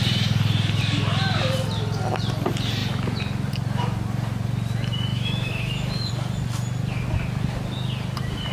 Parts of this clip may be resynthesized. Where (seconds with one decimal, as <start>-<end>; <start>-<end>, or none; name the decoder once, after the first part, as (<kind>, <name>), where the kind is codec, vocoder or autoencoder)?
5.1-6.1 (autoencoder, DAC-VAE)